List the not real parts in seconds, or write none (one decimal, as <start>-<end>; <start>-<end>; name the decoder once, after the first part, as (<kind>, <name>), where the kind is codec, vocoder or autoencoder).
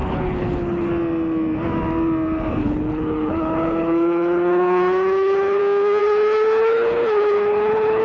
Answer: 0.0-0.9 (codec, HILCodec); 2.6-5.6; 6.0-8.0